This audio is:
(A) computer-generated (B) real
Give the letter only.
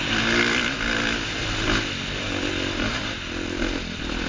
B